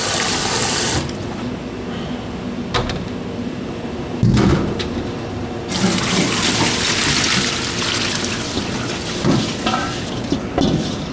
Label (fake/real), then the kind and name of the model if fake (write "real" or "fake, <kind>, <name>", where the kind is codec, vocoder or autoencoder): real